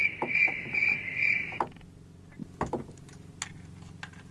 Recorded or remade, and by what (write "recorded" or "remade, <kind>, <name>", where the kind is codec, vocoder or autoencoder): recorded